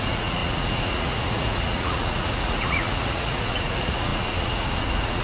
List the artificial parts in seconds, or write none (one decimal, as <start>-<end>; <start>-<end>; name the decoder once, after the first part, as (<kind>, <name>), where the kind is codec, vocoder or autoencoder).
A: 0.0-5.2 (vocoder, Vocos)